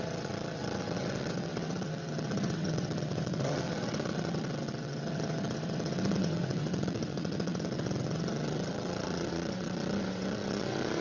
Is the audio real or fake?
fake